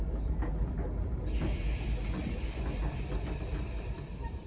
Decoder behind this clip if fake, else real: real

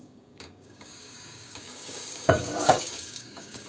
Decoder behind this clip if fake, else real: fake, codec, DAC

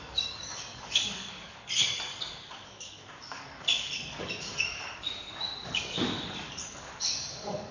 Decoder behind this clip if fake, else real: fake, codec, DAC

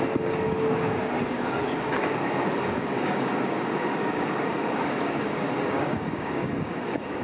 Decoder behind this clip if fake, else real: fake, codec, DAC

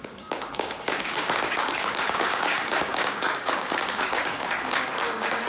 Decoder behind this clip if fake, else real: fake, codec, DAC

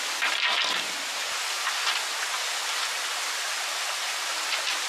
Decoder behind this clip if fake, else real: real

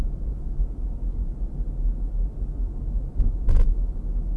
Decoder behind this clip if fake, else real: real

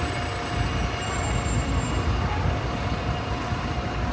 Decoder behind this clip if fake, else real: real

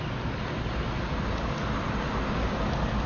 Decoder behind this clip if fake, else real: real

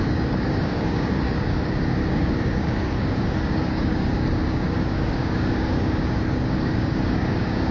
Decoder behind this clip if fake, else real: fake, codec, DAC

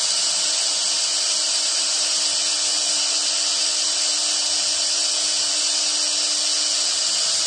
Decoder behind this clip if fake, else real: real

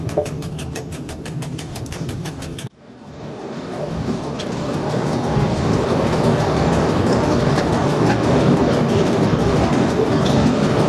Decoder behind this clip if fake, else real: fake, codec, DAC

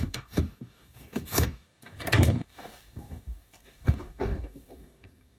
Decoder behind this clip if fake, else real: fake, codec, DAC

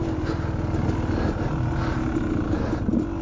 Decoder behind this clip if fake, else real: real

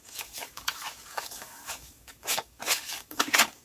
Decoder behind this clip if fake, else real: fake, codec, DAC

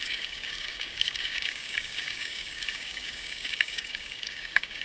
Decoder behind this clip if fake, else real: fake, codec, DAC